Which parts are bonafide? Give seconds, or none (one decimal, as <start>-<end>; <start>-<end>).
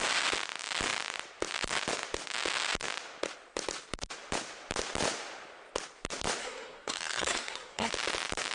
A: 0.0-6.4; 7.9-8.5